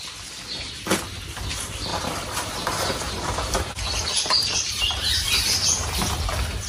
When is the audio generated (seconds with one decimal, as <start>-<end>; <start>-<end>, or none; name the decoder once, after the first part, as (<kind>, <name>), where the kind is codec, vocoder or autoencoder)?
1.9-5.9 (vocoder, BigVGAN v2)